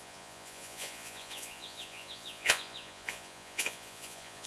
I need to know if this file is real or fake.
fake